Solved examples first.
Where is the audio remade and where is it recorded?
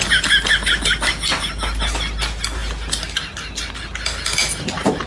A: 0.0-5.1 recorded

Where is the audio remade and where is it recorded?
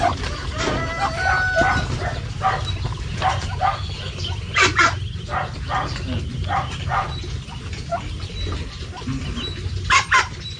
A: 0.0-10.6 recorded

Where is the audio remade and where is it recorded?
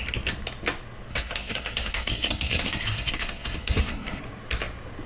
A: 0.0-1.1 recorded; 1.1-4.2 remade; 4.2-5.1 recorded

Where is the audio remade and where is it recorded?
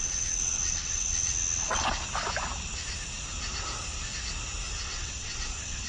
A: 0.0-1.3 remade; 1.3-4.8 recorded; 4.8-5.9 remade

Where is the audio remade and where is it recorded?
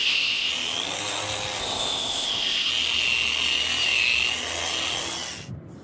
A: 0.0-0.5 remade; 0.5-1.6 recorded; 1.6-2.7 remade; 2.7-5.8 recorded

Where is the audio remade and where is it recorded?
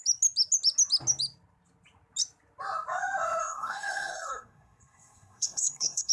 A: 0.0-3.4 recorded; 3.4-6.1 remade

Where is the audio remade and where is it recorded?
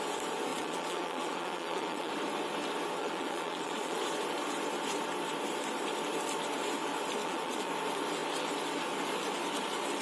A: 0.0-0.5 recorded; 0.5-2.1 remade; 2.1-3.0 recorded; 3.0-4.0 remade; 4.0-7.2 recorded; 7.2-7.7 remade; 7.7-10.0 recorded